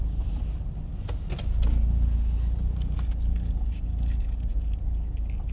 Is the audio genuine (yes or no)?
yes